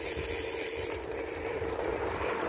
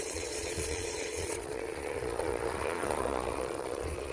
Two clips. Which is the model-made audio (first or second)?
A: second